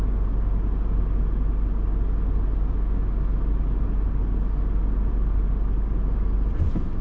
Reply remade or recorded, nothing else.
recorded